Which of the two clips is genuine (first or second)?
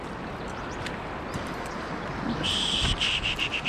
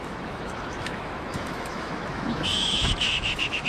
first